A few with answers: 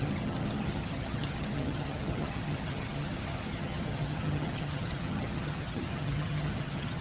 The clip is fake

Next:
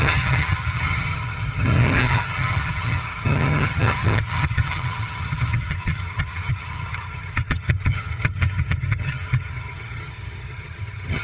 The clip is fake